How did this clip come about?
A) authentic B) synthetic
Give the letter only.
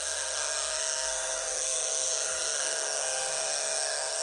B